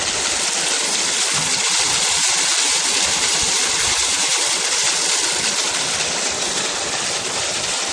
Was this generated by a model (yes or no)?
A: no